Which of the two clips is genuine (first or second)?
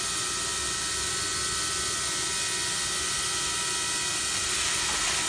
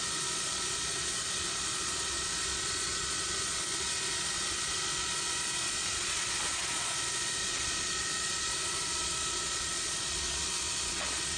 first